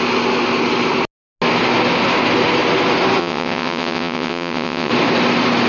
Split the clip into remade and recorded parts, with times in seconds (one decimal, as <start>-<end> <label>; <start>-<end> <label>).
0.0-3.2 recorded; 3.2-4.9 remade; 4.9-5.7 recorded